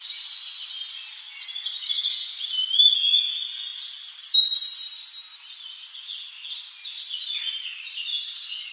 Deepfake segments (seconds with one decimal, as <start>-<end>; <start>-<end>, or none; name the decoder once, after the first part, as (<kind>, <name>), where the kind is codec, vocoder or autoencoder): none